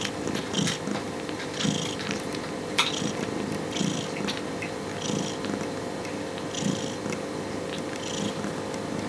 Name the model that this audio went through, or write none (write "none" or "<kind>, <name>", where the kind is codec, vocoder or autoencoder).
none